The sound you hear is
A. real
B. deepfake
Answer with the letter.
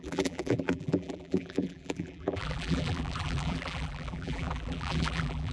B